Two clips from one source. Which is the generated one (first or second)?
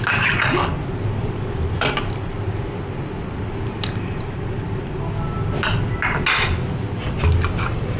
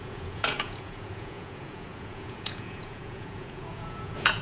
second